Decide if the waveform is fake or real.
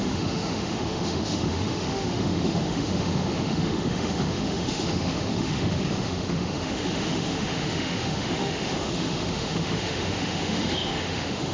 fake